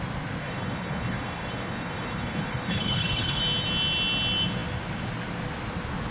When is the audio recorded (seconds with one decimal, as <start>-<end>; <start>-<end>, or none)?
0.0-0.4; 3.4-6.1